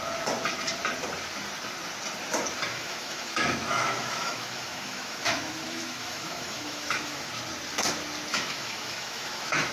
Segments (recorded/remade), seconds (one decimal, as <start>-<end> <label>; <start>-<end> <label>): 0.0-2.7 recorded; 2.7-7.3 remade; 7.3-8.3 recorded; 8.3-9.7 remade